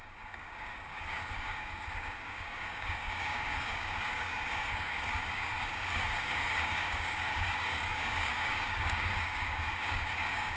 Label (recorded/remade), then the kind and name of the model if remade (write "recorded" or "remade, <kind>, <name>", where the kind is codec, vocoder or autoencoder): remade, codec, DAC